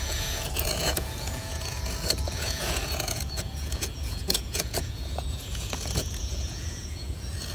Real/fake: fake